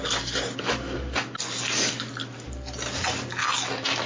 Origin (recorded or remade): recorded